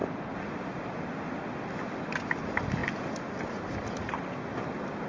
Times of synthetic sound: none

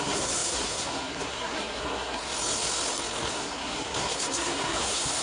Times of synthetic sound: 0.0-2.2; 3.3-5.2